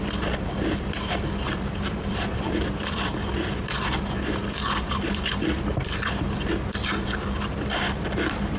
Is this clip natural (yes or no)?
no